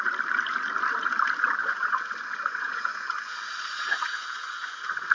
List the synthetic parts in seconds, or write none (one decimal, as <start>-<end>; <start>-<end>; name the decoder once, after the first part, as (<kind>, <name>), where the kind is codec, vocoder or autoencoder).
1.6-5.1 (vocoder, Vocos)